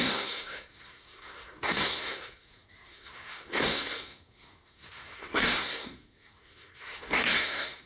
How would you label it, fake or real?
fake